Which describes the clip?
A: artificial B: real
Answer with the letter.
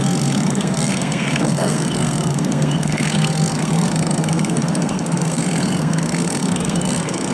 A